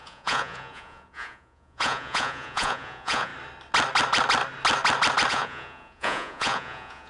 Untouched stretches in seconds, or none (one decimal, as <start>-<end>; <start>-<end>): 3.3-5.3